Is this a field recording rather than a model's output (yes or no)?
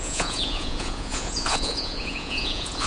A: no